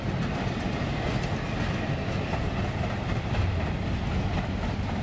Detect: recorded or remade recorded